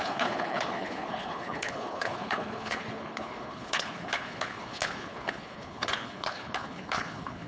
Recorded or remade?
remade